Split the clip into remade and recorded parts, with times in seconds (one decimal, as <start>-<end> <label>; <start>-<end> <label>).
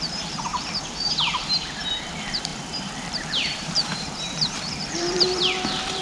0.0-0.5 remade; 0.5-1.9 recorded; 1.9-6.0 remade